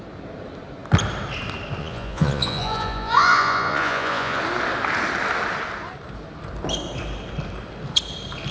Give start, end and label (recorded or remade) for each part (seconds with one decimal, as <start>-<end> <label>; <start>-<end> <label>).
0.0-1.8 recorded; 1.8-4.4 remade; 4.4-8.5 recorded